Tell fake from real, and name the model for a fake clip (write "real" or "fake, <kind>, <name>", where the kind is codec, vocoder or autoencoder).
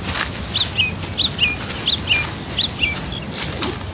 real